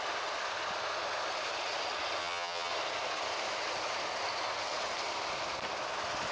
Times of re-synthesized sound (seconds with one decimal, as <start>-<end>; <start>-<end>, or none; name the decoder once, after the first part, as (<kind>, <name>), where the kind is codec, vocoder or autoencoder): 2.2-2.7 (vocoder, HiFi-GAN)